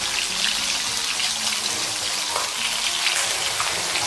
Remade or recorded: recorded